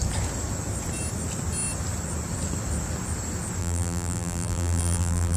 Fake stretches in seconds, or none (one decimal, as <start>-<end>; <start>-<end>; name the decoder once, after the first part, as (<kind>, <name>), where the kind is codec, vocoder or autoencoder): 3.6-5.4 (vocoder, BigVGAN v2)